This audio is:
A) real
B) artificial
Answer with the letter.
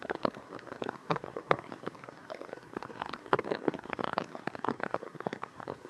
B